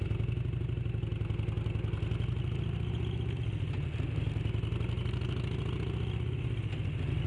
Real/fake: real